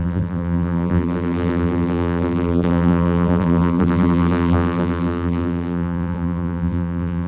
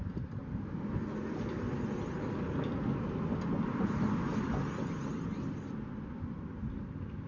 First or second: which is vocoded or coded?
first